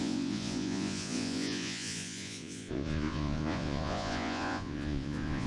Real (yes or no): no